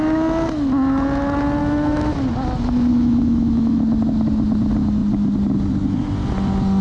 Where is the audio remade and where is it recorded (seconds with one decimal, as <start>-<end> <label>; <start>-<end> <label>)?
0.0-1.6 recorded; 1.6-2.3 remade; 2.3-2.9 recorded; 2.9-3.8 remade; 3.8-6.8 recorded